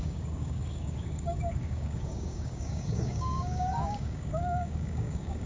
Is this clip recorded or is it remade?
remade